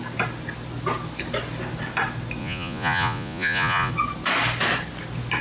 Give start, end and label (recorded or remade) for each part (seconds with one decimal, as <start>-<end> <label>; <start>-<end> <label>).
0.0-2.4 recorded; 2.4-3.9 remade; 3.9-5.4 recorded